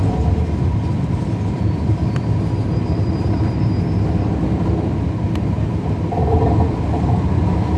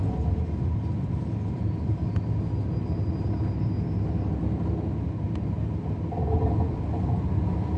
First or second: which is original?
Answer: second